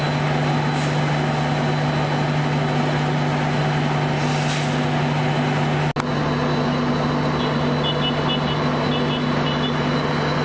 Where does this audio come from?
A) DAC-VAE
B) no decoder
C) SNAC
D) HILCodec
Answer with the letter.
B